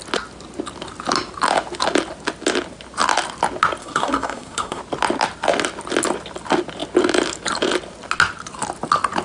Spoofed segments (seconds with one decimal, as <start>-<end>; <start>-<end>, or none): 3.8-4.8